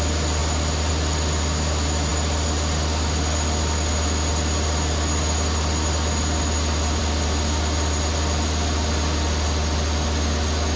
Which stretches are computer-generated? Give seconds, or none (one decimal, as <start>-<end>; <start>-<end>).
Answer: none